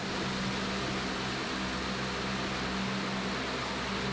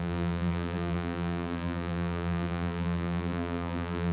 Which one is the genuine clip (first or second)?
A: first